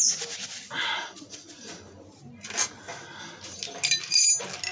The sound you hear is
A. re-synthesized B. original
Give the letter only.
B